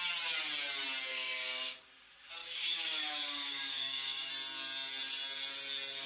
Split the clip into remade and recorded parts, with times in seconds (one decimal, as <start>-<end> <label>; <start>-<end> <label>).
0.0-1.1 recorded; 1.1-1.8 remade; 1.8-2.4 recorded; 2.4-4.3 remade; 4.3-6.1 recorded